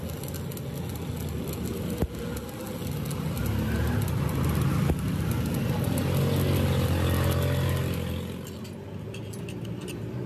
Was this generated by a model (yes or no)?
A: no